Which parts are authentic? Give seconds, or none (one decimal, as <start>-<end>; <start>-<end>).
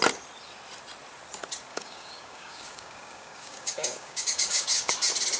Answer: 0.0-1.7; 4.9-5.4